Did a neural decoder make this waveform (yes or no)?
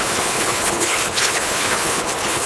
yes